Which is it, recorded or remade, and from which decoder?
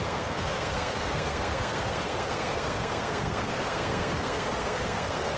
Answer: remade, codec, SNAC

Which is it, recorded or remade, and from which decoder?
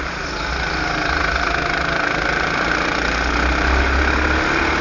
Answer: recorded